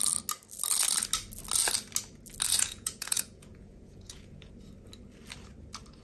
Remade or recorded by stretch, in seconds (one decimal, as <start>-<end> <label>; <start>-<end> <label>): 0.0-2.5 recorded; 2.5-4.5 remade; 4.5-6.0 recorded